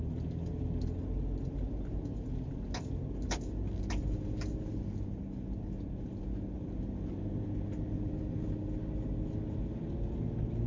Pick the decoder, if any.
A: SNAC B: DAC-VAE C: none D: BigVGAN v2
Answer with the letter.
C